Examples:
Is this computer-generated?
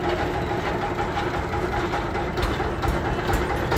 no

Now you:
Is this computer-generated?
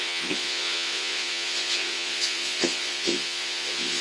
yes